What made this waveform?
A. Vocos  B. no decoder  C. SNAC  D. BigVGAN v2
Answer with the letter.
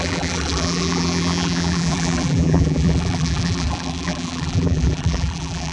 D